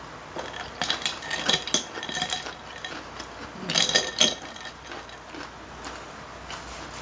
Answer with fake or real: real